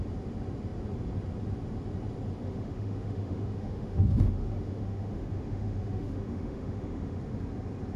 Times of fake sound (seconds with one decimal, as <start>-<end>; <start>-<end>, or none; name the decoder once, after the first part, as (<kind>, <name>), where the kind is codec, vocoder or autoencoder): 2.4-7.2 (autoencoder, DAC-VAE)